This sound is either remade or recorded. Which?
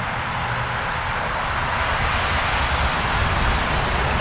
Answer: recorded